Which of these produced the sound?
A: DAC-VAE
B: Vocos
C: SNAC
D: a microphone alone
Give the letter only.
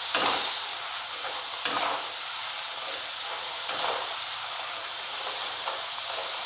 D